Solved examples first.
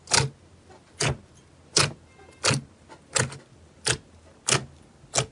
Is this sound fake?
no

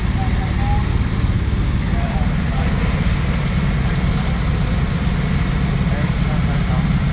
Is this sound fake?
no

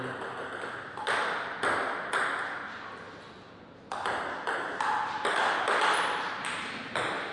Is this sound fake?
no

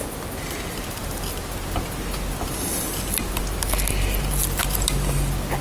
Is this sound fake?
no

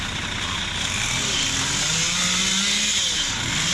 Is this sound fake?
no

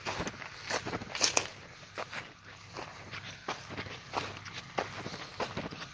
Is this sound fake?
no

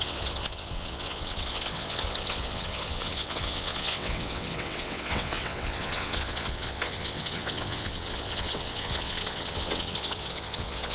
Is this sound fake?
yes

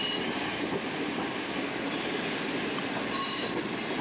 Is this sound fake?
no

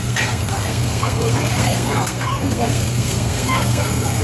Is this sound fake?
yes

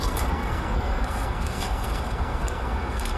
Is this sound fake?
yes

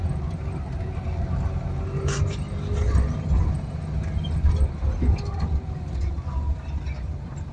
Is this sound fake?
no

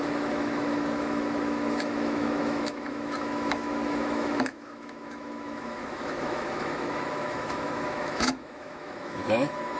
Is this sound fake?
yes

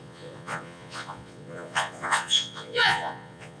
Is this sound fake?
yes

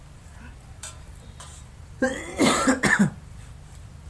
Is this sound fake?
yes